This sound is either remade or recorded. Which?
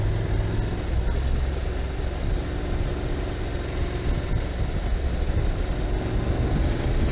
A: recorded